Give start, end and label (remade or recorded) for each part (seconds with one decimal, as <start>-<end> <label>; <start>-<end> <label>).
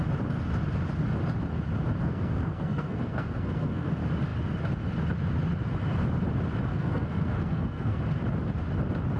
0.0-2.0 recorded; 2.0-3.9 remade; 3.9-6.7 recorded; 6.7-8.0 remade; 8.0-9.2 recorded